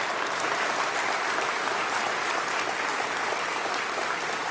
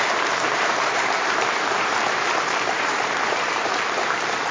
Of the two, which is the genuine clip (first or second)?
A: first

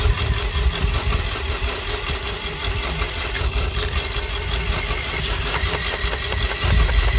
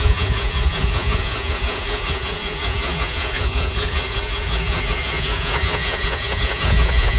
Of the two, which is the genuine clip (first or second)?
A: first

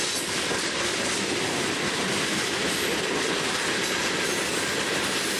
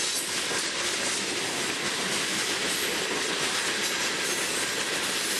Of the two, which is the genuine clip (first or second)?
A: second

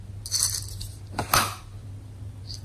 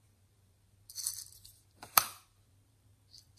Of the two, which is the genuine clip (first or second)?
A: first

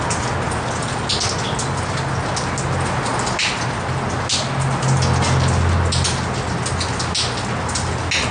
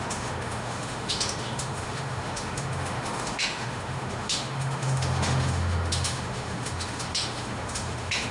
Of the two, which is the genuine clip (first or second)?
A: first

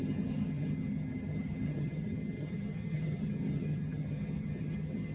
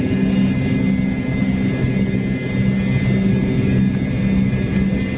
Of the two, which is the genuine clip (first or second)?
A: second